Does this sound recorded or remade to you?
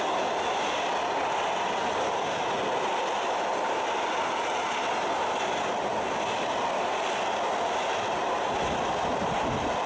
recorded